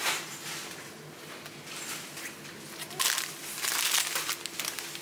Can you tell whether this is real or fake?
real